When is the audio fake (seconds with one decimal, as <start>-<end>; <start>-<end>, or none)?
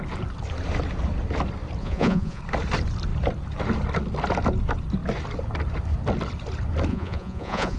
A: 1.8-2.4; 6.9-7.8